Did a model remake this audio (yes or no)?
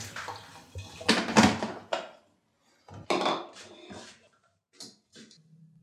no